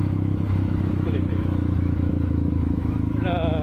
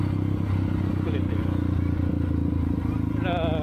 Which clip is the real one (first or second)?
second